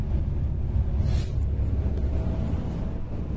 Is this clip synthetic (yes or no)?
no